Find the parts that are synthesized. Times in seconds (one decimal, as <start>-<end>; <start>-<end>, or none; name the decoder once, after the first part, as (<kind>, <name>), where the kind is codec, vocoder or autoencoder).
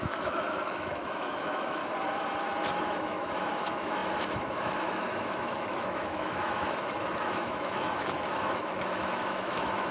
0.0-1.8 (autoencoder, DAC-VAE); 2.8-9.9